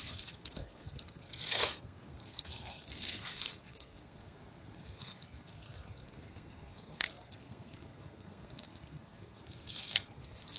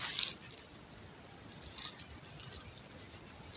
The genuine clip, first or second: second